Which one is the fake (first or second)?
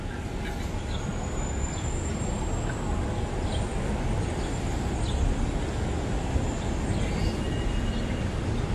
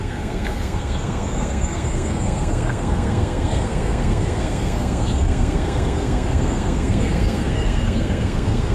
second